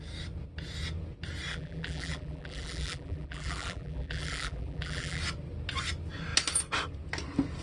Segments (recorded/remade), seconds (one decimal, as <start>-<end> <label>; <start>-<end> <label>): 0.0-1.5 recorded; 1.5-5.2 remade; 5.2-7.6 recorded